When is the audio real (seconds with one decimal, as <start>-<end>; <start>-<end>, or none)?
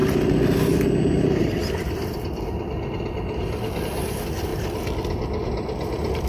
0.0-6.3